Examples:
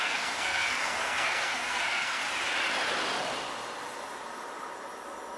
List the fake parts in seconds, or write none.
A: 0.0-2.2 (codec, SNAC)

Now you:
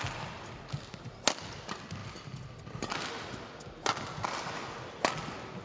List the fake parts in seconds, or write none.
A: none

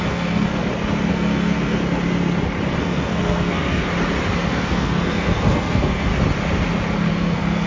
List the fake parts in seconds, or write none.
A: 0.0-0.6 (codec, SNAC); 1.1-1.8; 2.8-3.9; 4.5-6.1; 7.1-7.7

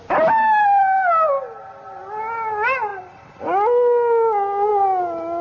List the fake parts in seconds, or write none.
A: none